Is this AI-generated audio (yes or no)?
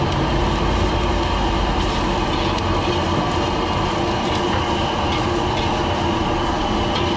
no